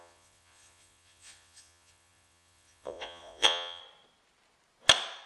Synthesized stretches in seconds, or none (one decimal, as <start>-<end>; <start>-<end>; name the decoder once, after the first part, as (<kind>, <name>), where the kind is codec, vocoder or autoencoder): 0.0-3.8 (vocoder, Vocos)